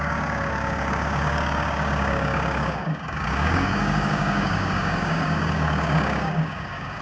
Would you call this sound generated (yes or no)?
yes